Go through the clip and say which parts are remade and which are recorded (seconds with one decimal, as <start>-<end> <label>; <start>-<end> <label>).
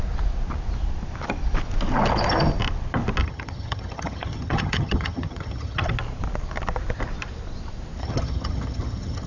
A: 0.0-3.2 recorded; 3.2-5.9 remade; 5.9-8.0 recorded; 8.0-9.3 remade